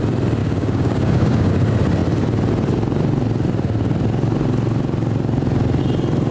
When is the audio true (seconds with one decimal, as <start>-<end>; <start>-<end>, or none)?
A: 0.0-0.4; 1.5-6.3